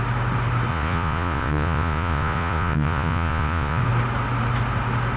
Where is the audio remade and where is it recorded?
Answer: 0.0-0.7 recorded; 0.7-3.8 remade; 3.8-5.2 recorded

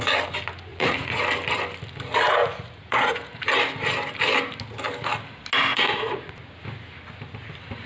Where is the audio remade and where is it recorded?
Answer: 0.0-0.7 recorded; 0.7-1.2 remade; 1.2-2.4 recorded; 2.4-3.4 remade; 3.4-5.7 recorded; 5.7-6.3 remade; 6.3-7.9 recorded

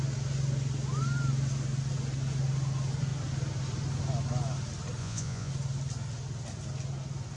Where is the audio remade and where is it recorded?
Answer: 0.0-5.0 recorded; 5.0-5.5 remade; 5.5-7.4 recorded

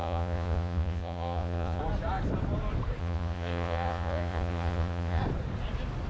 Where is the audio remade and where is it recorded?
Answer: 0.0-1.8 remade; 1.8-3.0 recorded; 3.0-5.2 remade; 5.2-6.1 recorded

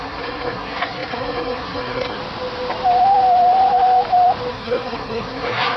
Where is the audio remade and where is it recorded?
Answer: 0.0-2.2 remade; 2.2-4.5 recorded; 4.5-5.8 remade

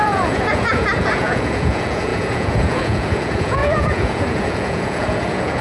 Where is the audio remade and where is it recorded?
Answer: 0.0-5.6 remade